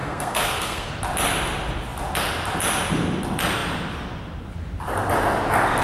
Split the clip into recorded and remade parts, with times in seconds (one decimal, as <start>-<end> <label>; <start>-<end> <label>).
0.0-0.9 remade; 0.9-5.8 recorded